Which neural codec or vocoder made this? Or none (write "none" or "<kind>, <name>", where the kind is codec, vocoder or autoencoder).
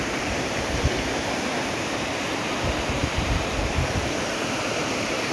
vocoder, BigVGAN v2